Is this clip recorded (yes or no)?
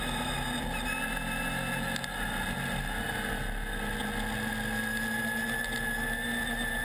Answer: yes